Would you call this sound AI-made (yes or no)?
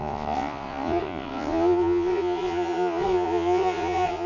yes